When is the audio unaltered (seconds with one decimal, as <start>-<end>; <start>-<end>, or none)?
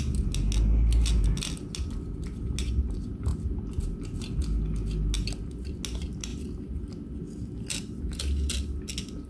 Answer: 0.0-9.3